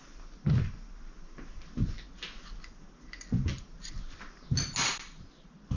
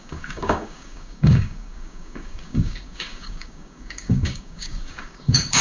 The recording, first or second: first